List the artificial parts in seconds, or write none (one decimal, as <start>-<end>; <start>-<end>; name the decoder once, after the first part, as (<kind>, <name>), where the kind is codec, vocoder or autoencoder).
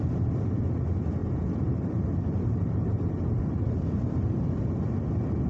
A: 1.2-4.5 (vocoder, BigVGAN v2)